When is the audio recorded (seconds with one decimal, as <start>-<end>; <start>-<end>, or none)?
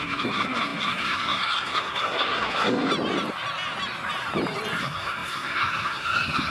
2.9-4.8